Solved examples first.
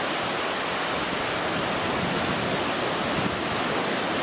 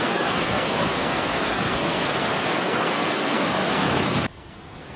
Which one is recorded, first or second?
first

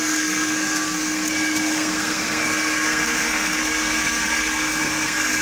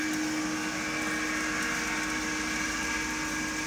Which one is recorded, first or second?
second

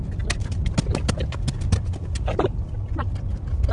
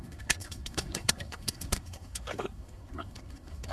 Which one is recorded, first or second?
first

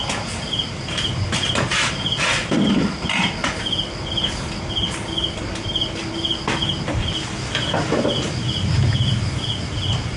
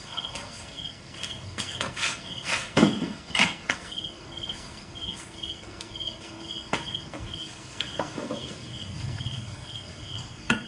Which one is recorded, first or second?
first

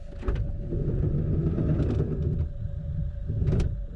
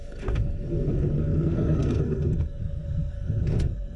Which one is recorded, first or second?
first